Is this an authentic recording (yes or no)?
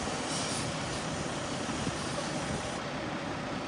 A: yes